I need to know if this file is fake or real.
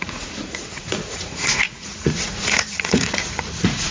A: fake